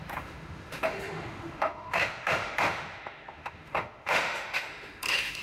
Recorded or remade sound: remade